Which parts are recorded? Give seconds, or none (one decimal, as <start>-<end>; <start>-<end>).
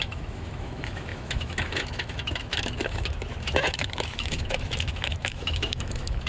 none